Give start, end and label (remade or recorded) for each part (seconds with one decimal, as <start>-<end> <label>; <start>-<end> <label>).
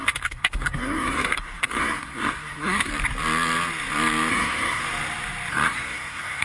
0.0-2.9 remade; 2.9-4.3 recorded; 4.3-4.8 remade; 4.8-5.5 recorded; 5.5-6.4 remade